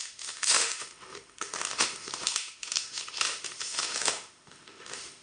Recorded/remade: remade